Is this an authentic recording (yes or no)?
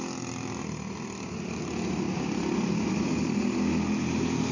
yes